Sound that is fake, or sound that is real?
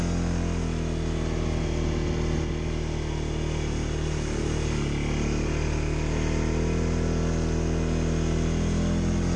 real